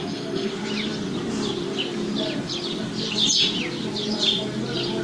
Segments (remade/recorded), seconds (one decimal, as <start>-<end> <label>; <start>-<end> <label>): 0.0-0.5 remade; 0.5-5.0 recorded